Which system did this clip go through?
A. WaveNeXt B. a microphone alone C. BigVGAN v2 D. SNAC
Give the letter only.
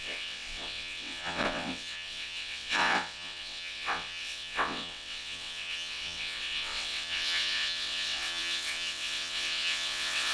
A